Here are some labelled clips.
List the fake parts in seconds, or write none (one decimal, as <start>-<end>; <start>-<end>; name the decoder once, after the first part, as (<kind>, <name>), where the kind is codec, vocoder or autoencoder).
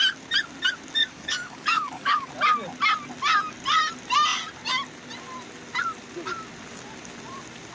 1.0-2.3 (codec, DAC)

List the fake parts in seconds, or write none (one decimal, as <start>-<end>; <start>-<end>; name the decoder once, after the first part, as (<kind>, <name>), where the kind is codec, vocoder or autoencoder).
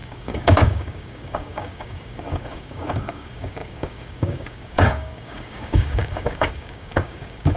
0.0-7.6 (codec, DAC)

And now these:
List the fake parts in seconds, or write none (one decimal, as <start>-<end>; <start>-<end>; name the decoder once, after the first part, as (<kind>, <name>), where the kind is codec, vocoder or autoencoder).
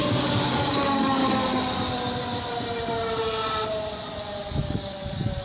0.0-1.2 (codec, DAC); 4.4-5.4